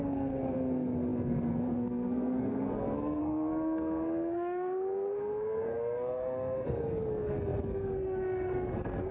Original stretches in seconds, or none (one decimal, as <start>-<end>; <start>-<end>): none